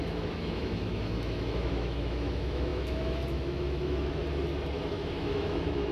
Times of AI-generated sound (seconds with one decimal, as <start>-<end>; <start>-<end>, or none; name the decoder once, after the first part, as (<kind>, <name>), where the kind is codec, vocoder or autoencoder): 0.0-4.2 (autoencoder, DAC-VAE); 4.9-5.9